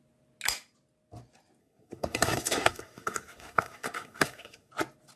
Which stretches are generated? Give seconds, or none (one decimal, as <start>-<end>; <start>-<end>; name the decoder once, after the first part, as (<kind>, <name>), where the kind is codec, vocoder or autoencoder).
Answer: 1.6-4.7 (codec, SNAC)